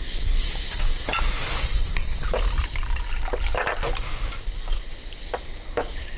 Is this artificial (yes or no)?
no